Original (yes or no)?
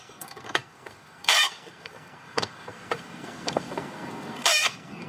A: no